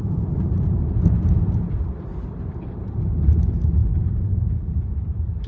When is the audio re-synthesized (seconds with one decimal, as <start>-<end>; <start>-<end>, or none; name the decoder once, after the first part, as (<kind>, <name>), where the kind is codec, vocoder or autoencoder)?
0.0-5.5 (vocoder, BigVGAN v2)